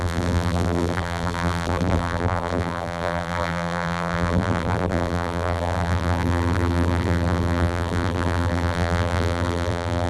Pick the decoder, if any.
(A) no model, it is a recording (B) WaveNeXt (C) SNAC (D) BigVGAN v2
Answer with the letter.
D